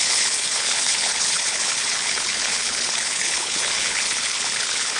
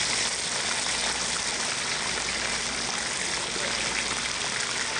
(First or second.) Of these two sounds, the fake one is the first